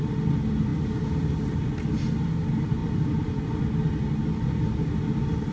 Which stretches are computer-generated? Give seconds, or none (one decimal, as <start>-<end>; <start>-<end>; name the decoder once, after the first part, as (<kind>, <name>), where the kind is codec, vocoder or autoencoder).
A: none